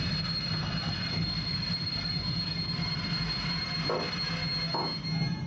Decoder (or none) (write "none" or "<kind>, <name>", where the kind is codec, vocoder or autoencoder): none